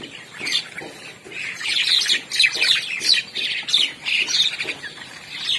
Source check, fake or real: real